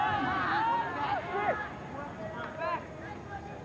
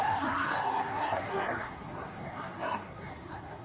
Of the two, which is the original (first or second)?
first